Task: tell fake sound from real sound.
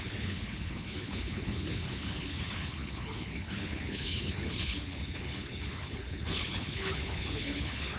fake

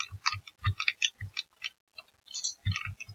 real